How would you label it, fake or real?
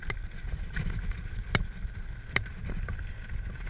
real